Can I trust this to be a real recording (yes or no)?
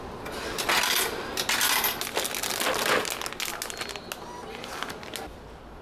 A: yes